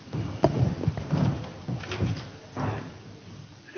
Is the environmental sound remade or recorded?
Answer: recorded